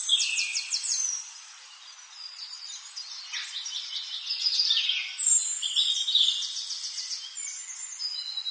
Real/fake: real